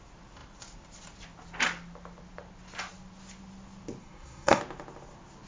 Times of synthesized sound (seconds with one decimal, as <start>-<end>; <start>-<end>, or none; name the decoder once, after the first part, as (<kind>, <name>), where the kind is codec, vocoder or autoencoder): 4.0-4.6 (codec, SNAC)